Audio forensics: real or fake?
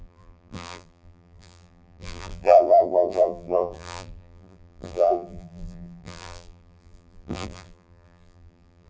fake